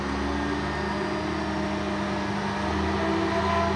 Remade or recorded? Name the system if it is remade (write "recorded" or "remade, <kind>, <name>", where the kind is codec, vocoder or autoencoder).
recorded